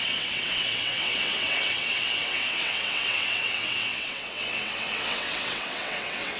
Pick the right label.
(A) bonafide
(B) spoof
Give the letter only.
B